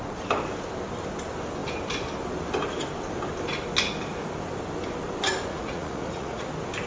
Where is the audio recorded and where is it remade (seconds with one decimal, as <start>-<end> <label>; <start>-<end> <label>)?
0.0-5.5 recorded; 5.5-6.5 remade; 6.5-6.9 recorded